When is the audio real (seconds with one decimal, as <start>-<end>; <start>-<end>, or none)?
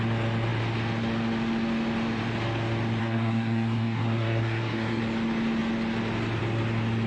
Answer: 0.0-3.0; 5.0-7.1